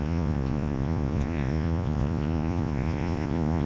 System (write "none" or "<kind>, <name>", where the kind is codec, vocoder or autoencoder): vocoder, Vocos